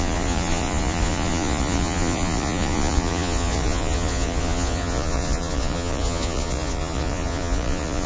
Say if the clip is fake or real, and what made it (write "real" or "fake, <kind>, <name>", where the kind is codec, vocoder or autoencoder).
fake, vocoder, Vocos